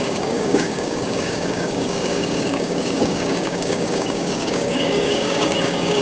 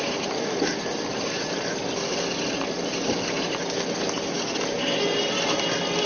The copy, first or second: first